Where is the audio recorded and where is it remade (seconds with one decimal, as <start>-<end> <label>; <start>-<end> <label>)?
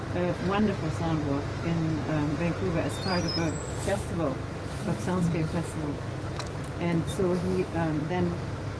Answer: 0.0-3.1 recorded; 3.1-8.1 remade; 8.1-8.8 recorded